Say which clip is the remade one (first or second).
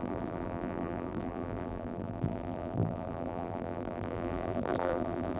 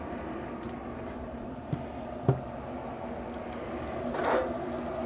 first